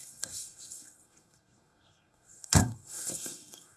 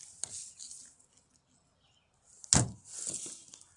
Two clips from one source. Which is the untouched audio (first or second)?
second